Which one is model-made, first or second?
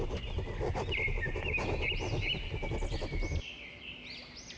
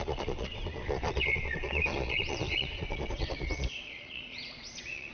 second